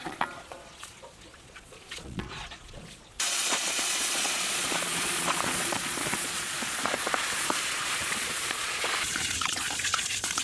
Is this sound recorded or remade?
remade